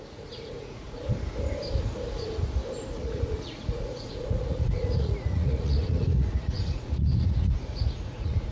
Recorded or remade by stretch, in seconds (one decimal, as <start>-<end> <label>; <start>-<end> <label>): 0.0-1.0 remade; 1.0-2.9 recorded; 2.9-8.5 remade